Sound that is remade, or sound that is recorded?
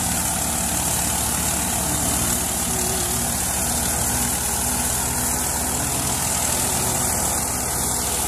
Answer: recorded